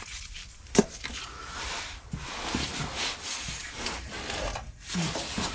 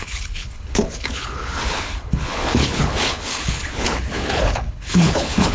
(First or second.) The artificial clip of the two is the second